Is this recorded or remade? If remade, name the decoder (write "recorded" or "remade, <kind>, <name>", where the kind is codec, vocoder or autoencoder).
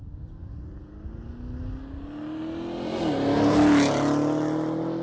recorded